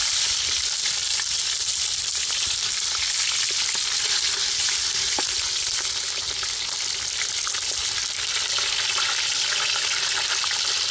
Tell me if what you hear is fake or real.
real